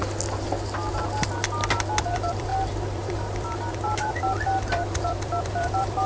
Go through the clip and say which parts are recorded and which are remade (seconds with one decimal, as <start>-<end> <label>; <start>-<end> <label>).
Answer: 0.0-2.1 recorded; 2.1-6.1 remade